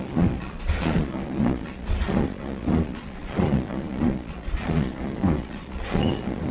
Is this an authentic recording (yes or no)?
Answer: no